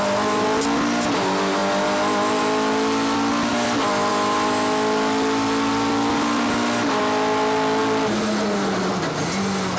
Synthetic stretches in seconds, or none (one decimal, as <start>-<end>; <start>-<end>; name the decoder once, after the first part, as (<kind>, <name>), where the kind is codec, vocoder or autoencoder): none